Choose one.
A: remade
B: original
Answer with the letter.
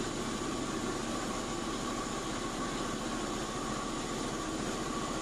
B